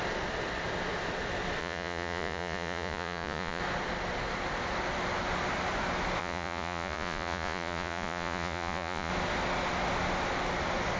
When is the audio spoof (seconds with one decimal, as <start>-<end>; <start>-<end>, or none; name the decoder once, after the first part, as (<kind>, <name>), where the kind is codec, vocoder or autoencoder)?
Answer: 1.6-3.6 (vocoder, Vocos); 6.2-9.1